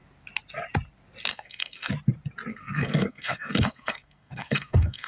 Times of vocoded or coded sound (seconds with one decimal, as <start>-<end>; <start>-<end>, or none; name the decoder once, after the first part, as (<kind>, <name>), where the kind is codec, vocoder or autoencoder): 1.3-1.9 (codec, SNAC); 2.5-5.1